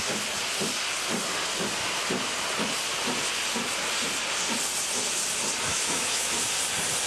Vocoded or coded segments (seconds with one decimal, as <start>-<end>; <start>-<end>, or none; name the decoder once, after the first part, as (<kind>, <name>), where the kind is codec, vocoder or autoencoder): 5.7-6.3 (autoencoder, DAC-VAE)